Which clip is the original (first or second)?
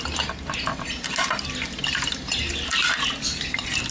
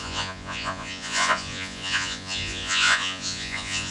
first